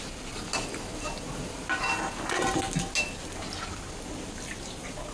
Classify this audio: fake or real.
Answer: real